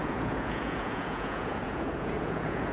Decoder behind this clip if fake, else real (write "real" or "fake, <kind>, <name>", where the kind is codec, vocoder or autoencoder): fake, vocoder, Vocos